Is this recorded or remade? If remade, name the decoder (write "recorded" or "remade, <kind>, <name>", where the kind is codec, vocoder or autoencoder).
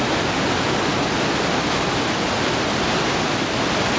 recorded